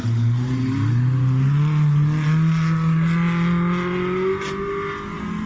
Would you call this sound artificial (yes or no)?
no